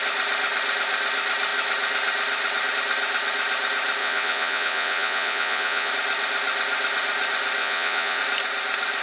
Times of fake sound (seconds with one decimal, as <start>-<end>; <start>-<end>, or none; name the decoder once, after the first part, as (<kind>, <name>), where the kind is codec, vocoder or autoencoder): 4.0-5.9 (vocoder, Vocos); 7.6-8.2